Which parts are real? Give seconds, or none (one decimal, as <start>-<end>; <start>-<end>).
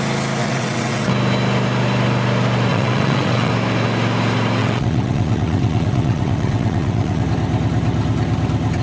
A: 0.0-0.4; 1.1-2.7; 3.5-4.6; 7.2-8.8